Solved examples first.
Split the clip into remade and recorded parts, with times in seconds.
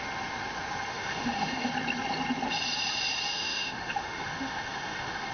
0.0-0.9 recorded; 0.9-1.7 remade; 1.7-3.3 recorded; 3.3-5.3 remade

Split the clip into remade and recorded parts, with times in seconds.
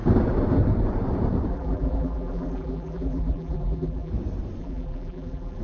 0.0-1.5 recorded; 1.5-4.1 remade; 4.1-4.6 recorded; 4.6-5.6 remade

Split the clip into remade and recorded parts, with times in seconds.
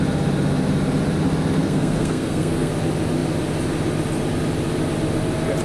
0.0-1.6 recorded; 1.6-2.7 remade; 2.7-5.6 recorded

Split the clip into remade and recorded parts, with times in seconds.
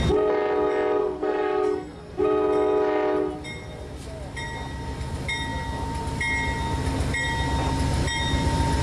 0.0-1.0 recorded; 1.0-2.1 remade; 2.1-8.8 recorded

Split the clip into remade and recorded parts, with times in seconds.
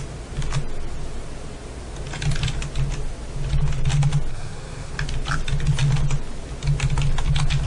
0.0-4.3 recorded; 4.3-4.9 remade; 4.9-7.7 recorded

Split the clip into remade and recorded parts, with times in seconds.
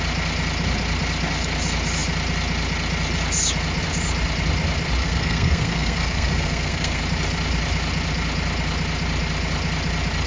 0.0-5.0 recorded; 5.0-7.0 remade; 7.0-10.3 recorded